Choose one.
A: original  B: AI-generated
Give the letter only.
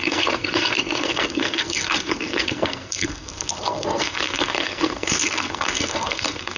B